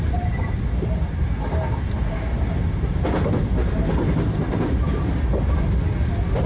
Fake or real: real